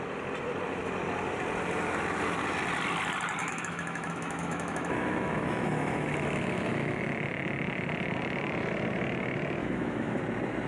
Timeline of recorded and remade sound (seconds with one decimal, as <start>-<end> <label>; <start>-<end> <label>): 0.0-3.4 recorded; 3.4-7.0 remade; 7.0-9.6 recorded; 9.6-10.2 remade; 10.2-10.7 recorded